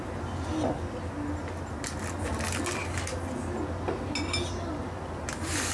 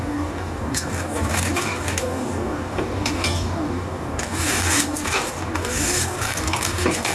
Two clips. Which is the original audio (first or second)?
first